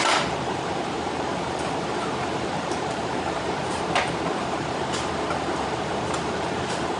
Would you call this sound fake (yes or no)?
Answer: yes